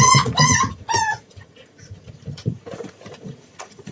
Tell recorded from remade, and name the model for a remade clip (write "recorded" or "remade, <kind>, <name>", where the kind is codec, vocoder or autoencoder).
remade, vocoder, Vocos